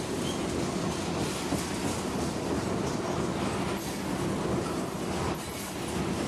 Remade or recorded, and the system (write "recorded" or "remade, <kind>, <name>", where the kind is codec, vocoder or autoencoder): recorded